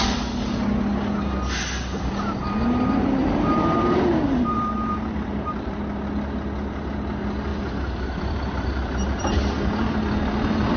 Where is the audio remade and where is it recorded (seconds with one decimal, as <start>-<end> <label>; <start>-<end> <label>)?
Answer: 0.0-3.2 recorded; 3.2-5.8 remade; 5.8-7.5 recorded; 7.5-9.2 remade; 9.2-10.8 recorded